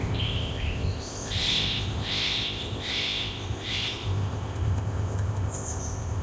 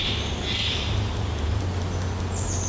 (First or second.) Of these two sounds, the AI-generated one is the first